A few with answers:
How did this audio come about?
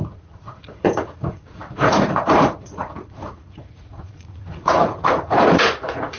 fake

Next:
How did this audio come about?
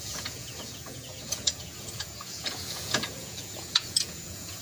fake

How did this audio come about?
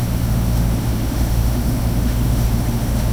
fake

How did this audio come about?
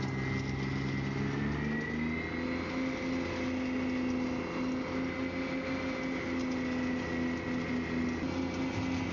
real